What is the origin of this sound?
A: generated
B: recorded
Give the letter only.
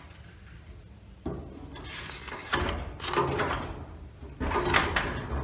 B